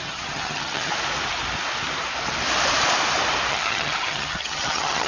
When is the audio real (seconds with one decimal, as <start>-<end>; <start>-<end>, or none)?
0.9-3.5